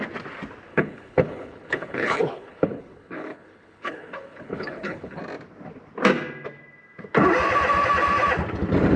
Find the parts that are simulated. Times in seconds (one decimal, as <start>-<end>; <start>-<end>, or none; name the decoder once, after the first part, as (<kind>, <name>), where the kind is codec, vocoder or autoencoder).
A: 0.7-5.2 (codec, HILCodec)